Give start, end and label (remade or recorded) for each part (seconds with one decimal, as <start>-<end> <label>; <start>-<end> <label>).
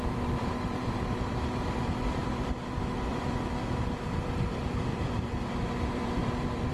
0.0-6.7 remade